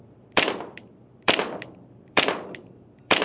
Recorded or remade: remade